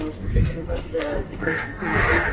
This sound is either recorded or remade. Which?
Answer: remade